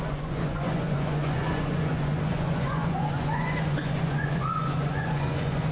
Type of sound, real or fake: fake